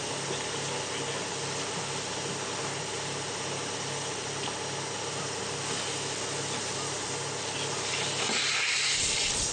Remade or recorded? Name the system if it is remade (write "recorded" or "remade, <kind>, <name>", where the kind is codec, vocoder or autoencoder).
recorded